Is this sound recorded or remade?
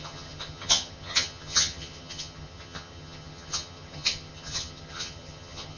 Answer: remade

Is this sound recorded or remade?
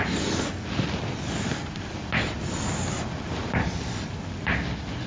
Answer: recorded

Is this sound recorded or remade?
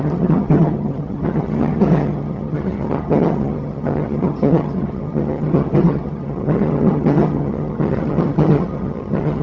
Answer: remade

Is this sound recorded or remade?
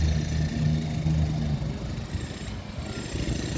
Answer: recorded